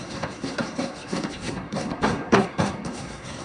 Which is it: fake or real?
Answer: fake